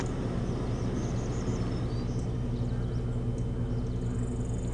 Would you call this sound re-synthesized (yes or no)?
no